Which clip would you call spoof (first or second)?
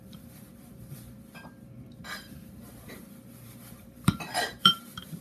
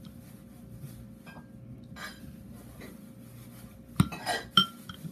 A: first